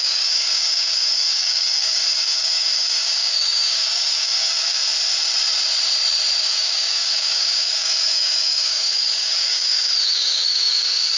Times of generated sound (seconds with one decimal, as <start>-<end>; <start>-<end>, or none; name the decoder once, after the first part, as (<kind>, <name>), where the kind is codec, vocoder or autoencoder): 0.0-4.8 (codec, DAC); 6.4-11.2